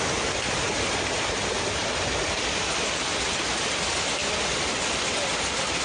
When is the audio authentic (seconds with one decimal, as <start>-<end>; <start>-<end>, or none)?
0.0-5.8